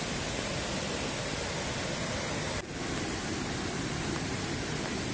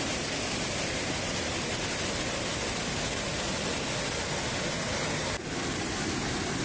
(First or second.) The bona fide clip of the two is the second